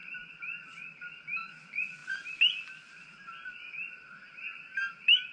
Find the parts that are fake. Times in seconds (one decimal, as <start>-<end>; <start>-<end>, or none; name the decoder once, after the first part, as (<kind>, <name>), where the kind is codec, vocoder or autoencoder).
0.0-1.1 (vocoder, BigVGAN v2); 2.0-4.2